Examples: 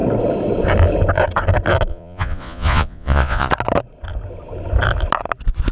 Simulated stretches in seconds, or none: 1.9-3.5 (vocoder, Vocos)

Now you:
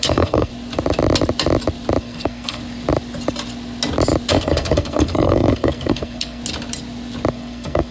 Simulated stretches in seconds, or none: 0.0-0.5 (codec, SNAC); 2.0-2.6; 4.3-6.4; 7.3-7.9

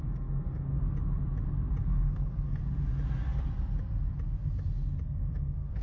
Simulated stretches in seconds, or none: 0.0-0.8 (codec, SNAC); 1.8-2.6; 5.0-5.8

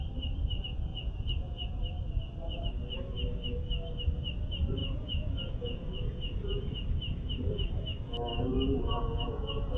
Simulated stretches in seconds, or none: 0.9-1.8 (vocoder, Vocos); 4.8-6.9; 8.3-9.8